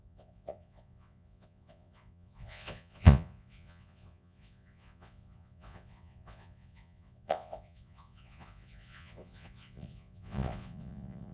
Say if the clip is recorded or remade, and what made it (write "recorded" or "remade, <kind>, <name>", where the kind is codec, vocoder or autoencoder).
remade, vocoder, Vocos